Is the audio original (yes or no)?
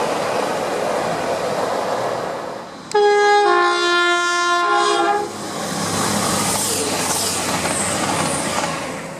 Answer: yes